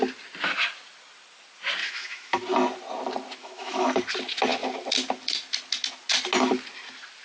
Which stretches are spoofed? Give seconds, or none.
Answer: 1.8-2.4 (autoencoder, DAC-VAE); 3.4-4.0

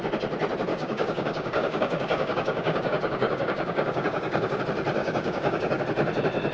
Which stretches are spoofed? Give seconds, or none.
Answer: 0.7-4.6 (codec, DAC); 5.0-5.8

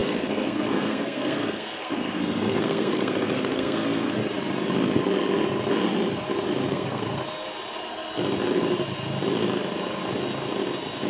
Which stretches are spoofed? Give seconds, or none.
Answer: 0.0-4.2 (codec, SNAC); 6.7-7.2

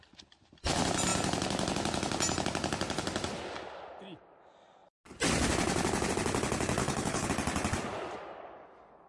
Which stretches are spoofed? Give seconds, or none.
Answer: 6.8-7.3 (codec, HILCodec)